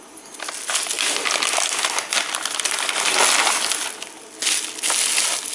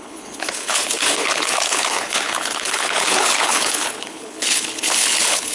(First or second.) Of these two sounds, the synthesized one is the second